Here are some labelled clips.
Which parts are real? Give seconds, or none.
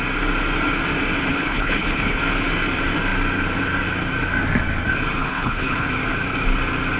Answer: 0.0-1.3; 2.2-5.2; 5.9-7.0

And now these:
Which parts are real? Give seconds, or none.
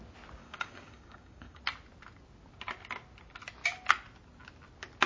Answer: 0.0-0.4; 1.6-5.1